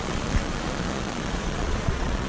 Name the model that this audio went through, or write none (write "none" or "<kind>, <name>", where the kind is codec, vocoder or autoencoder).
vocoder, Vocos